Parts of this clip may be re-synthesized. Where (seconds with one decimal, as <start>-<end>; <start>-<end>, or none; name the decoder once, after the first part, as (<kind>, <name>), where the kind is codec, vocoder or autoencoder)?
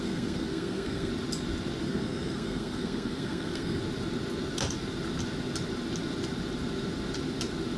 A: 0.0-1.1 (codec, SNAC); 1.8-3.8